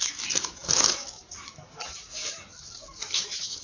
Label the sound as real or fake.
fake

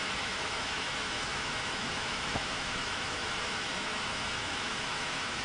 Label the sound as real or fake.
fake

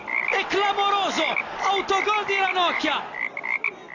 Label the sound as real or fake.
real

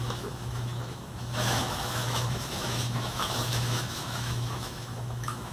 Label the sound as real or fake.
fake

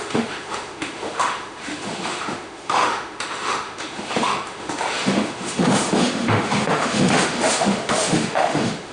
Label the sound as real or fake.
fake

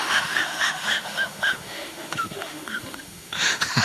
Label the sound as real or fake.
fake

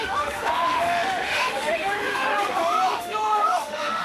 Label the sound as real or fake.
fake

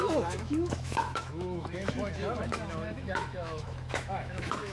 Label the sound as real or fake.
fake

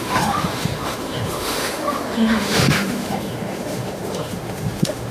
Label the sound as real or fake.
fake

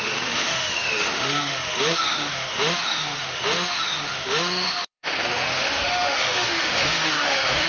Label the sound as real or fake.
fake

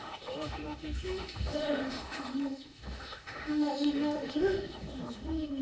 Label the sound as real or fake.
fake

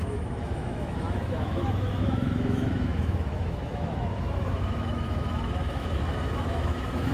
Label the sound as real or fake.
fake